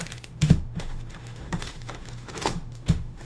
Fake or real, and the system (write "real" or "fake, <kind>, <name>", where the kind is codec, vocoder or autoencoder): fake, autoencoder, DAC-VAE